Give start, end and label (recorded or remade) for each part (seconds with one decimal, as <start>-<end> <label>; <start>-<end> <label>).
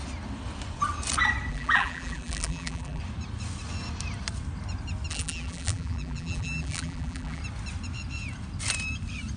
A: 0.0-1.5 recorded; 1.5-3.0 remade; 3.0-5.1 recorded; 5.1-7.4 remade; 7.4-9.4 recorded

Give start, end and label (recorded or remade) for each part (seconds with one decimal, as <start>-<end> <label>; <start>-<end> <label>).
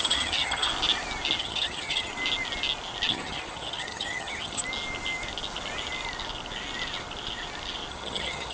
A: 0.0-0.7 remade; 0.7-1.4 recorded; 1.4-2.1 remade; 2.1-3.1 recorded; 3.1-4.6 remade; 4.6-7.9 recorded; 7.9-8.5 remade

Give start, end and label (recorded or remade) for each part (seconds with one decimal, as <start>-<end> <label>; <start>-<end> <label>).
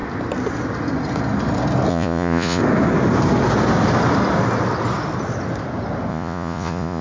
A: 0.0-1.9 recorded; 1.9-2.6 remade; 2.6-6.1 recorded; 6.1-7.0 remade